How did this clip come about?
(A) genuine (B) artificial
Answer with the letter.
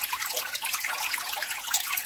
B